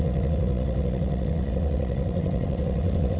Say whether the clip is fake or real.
fake